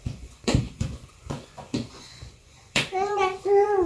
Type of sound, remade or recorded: remade